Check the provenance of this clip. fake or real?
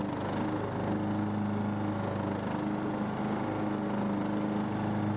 real